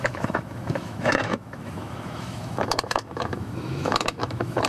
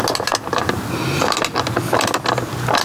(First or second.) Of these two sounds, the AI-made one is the first